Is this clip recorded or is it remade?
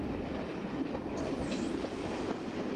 recorded